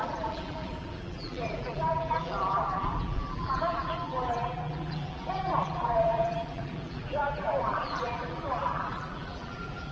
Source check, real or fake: fake